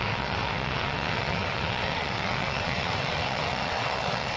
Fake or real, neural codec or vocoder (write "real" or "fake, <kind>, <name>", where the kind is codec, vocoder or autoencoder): fake, vocoder, WaveNeXt